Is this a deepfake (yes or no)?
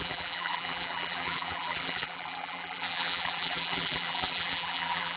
yes